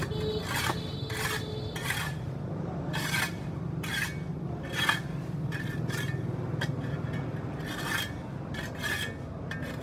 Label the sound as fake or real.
real